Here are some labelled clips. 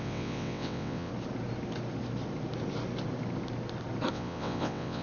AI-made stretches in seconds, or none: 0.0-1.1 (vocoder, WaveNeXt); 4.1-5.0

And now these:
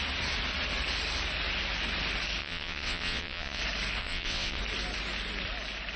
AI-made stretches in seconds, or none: 2.4-3.6 (vocoder, WaveNeXt); 4.0-4.6

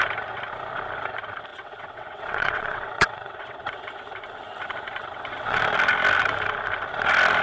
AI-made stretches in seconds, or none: 1.5-3.7 (vocoder, WaveNeXt); 5.0-5.6

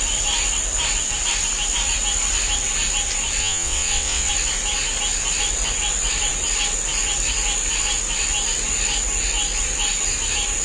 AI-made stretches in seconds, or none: 3.4-4.3 (vocoder, WaveNeXt)